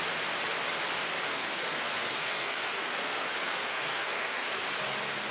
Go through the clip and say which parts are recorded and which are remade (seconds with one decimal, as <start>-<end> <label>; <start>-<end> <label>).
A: 0.0-1.3 recorded; 1.3-4.5 remade; 4.5-5.3 recorded